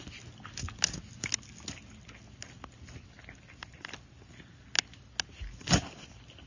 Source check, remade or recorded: recorded